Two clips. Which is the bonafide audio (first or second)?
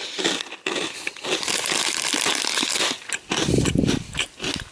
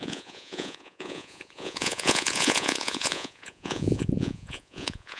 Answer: first